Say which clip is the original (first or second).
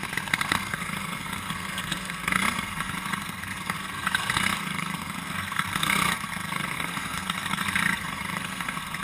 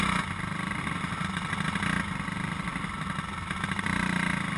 second